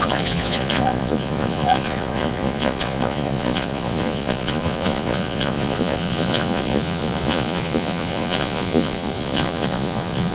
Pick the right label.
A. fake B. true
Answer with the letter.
A